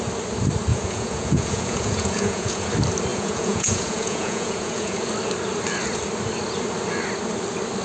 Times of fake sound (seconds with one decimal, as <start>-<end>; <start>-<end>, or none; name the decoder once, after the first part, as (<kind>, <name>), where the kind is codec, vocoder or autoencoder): 0.7-2.7 (vocoder, Vocos); 3.1-5.1